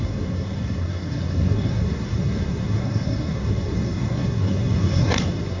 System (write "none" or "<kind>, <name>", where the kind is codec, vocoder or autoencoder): codec, SNAC